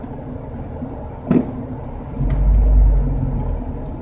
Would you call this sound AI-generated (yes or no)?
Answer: no